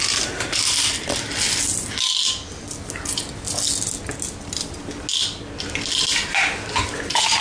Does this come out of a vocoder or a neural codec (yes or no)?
no